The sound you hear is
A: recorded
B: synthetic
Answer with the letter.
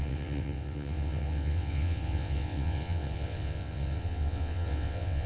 B